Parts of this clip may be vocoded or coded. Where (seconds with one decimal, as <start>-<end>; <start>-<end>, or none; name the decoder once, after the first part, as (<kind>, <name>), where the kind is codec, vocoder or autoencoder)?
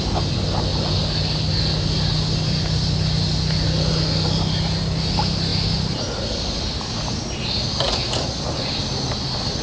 none